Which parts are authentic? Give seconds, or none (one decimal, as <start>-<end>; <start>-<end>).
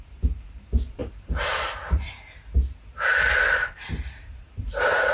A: 0.0-1.0; 2.1-3.6